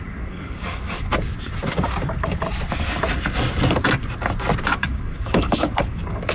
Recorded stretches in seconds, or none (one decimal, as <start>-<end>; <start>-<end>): 1.1-4.7